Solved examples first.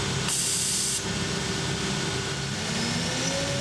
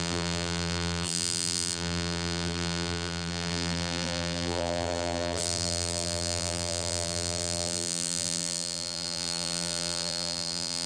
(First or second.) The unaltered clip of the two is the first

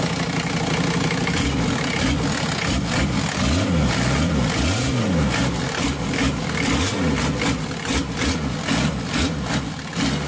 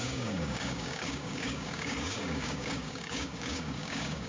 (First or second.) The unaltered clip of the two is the first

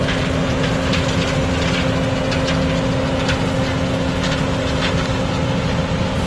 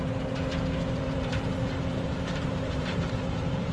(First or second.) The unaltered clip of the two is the first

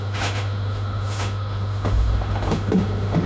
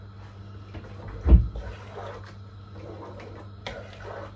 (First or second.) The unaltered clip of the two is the second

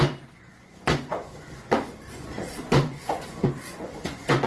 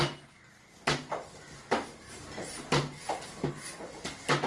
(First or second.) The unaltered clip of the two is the second